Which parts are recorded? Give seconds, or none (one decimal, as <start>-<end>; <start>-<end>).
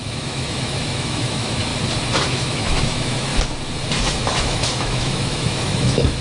1.7-2.3; 3.3-4.1